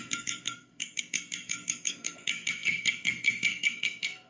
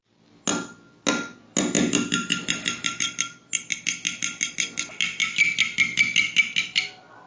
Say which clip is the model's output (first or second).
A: first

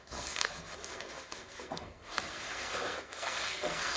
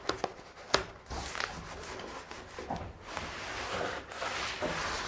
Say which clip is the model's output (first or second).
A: first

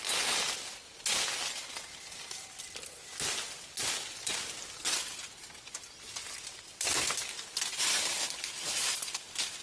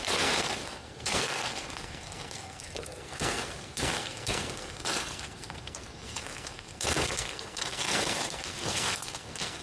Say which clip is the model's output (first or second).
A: second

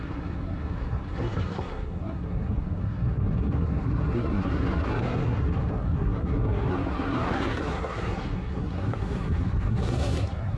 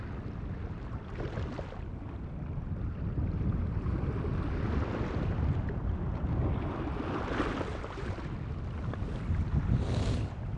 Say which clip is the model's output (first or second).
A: first